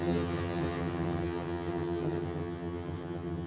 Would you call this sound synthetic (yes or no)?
yes